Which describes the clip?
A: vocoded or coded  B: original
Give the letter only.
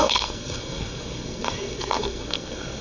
A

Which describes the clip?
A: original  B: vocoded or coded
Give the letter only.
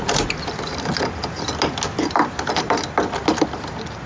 A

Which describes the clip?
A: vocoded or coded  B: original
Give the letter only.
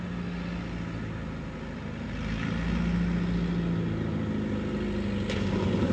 B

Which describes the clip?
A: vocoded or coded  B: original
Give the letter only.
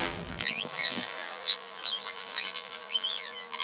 A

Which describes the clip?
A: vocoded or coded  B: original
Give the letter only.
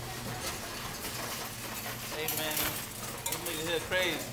B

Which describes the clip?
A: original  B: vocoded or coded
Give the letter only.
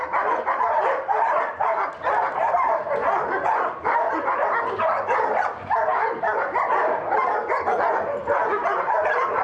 A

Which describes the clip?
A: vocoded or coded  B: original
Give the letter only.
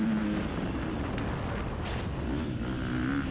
B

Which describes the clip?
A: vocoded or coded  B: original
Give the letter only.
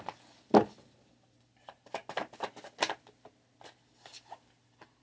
B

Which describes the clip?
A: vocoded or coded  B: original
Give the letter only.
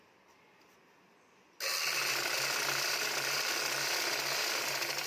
B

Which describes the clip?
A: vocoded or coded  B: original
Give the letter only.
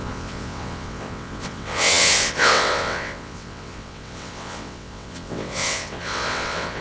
A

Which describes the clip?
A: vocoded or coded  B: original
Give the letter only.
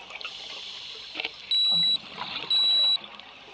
B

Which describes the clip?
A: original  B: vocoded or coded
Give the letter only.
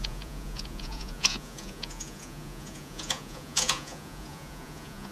B